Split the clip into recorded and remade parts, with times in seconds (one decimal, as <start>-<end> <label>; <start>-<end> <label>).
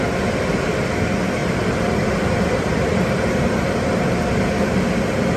0.0-1.4 recorded; 1.4-4.4 remade; 4.4-5.4 recorded